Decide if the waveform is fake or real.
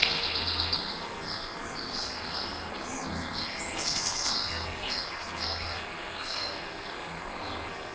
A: fake